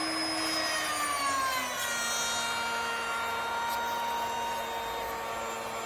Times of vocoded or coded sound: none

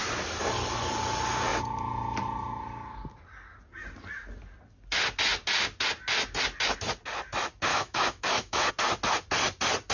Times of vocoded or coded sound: 7.7-8.7 (autoencoder, DAC-VAE)

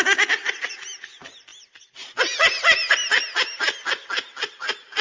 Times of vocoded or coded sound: none